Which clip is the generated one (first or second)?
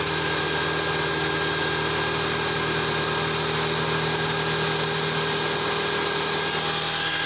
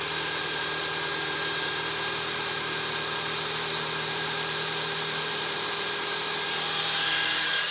second